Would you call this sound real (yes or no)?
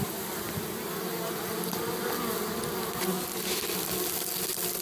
yes